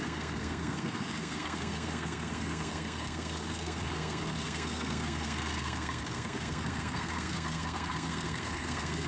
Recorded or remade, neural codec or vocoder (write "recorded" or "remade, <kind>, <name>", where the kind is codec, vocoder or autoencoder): remade, codec, SNAC